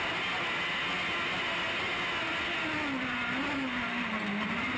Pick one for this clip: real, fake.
real